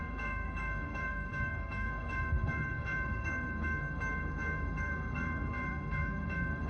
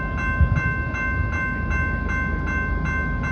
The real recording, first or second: second